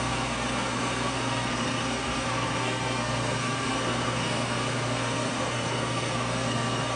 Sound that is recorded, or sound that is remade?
remade